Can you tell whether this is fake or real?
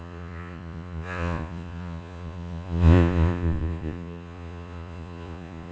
fake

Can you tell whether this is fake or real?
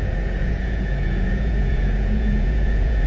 fake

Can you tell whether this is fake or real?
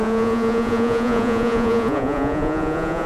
fake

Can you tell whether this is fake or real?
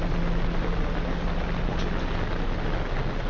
real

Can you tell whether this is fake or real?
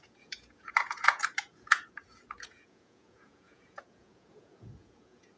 fake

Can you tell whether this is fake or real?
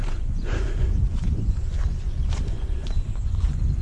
fake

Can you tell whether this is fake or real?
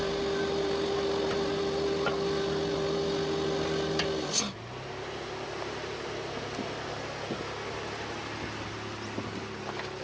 real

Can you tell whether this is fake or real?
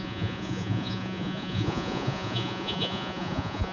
fake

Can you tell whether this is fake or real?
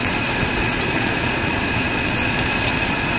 fake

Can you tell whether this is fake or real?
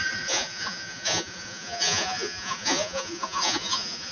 fake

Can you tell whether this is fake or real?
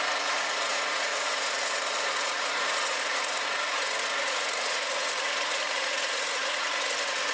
fake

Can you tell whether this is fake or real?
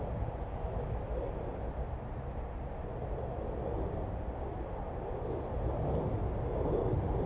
real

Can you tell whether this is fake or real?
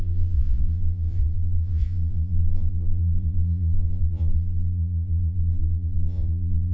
fake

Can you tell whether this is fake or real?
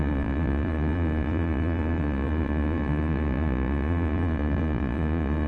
fake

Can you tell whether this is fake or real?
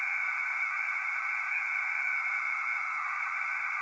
fake